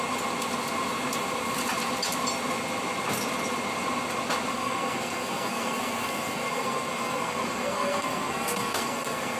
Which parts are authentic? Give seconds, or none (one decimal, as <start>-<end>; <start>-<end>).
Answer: 0.0-4.5